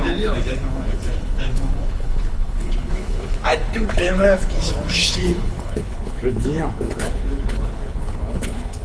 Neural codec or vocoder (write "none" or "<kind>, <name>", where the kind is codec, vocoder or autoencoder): codec, HILCodec